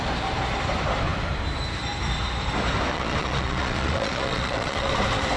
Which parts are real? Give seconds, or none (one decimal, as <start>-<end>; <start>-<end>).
0.0-2.9; 4.9-5.4